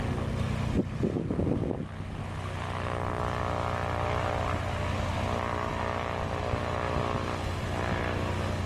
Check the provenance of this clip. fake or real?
real